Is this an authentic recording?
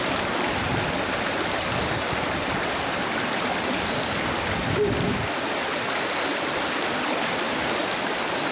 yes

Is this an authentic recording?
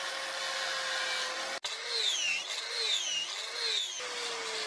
yes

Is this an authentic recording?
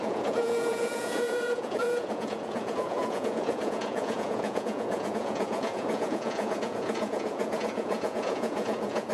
no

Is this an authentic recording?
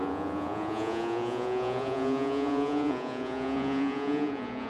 no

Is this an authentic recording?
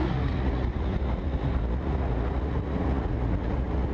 no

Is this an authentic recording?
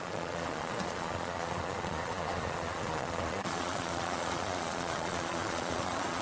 no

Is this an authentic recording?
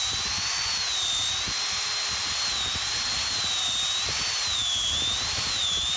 yes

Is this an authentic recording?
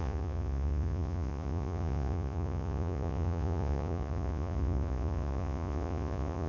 no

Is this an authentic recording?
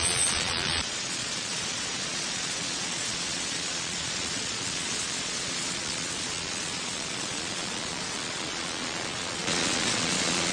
no